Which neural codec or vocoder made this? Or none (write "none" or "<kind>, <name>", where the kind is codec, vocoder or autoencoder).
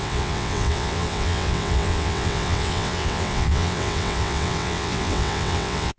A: vocoder, WaveNeXt